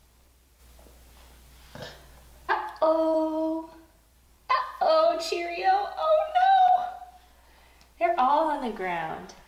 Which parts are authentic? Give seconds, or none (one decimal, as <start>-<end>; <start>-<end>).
0.6-2.5; 5.7-6.5; 7.0-9.1